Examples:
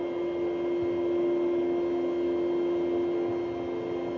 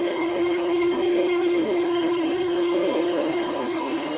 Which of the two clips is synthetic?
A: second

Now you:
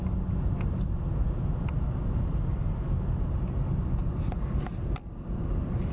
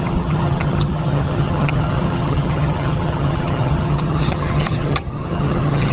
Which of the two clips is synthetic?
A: second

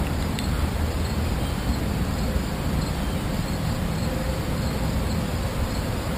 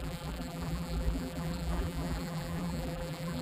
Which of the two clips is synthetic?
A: second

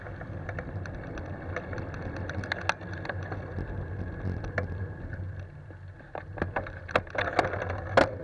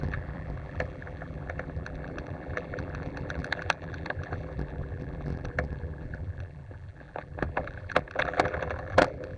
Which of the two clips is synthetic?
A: second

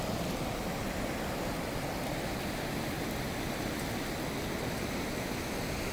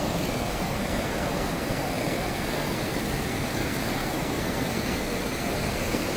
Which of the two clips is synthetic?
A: second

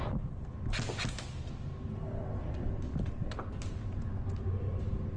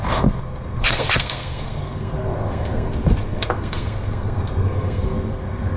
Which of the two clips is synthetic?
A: second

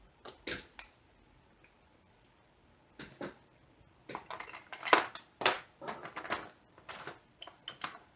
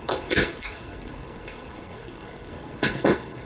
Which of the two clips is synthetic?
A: second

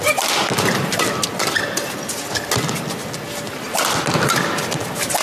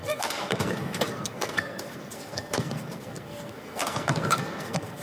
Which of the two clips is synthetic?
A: second